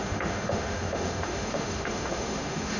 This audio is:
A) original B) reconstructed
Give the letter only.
B